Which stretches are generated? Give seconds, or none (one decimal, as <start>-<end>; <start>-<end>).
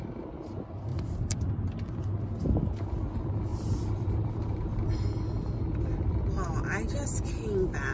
0.9-1.4; 3.5-4.9